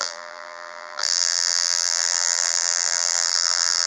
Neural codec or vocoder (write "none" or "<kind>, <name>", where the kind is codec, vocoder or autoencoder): vocoder, BigVGAN v2